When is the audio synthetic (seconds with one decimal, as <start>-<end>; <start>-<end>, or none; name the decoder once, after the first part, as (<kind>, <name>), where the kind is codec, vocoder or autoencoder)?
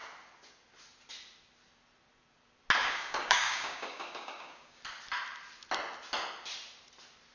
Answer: 2.8-4.8 (codec, DAC)